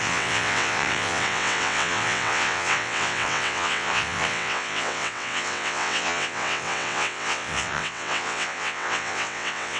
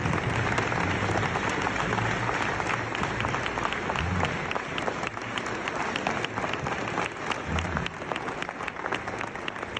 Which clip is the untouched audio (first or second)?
second